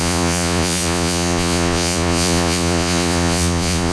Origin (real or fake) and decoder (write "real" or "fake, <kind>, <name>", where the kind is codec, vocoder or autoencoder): fake, vocoder, Vocos